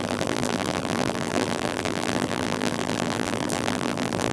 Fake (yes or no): yes